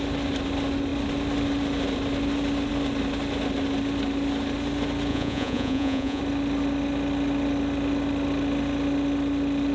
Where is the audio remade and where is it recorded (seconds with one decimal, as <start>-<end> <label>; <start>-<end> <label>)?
0.0-5.1 recorded; 5.1-6.2 remade; 6.2-9.7 recorded